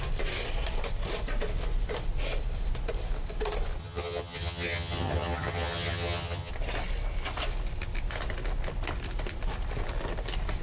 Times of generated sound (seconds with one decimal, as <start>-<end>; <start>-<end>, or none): 3.8-6.5